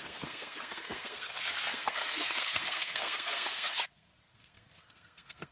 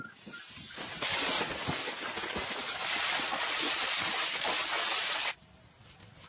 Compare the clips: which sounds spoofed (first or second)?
first